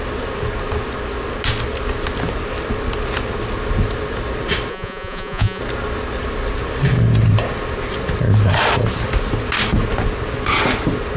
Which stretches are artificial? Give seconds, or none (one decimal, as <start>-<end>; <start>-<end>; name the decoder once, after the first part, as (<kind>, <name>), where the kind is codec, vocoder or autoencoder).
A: 4.7-5.6 (vocoder, Vocos)